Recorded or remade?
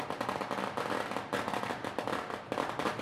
recorded